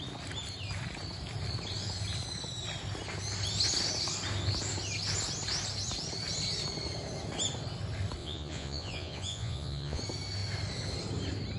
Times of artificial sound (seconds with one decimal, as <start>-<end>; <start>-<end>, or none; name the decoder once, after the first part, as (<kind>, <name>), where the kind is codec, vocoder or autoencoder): 8.2-10.0 (vocoder, Vocos)